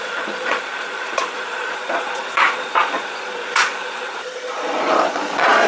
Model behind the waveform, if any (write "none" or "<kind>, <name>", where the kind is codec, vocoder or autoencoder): vocoder, Vocos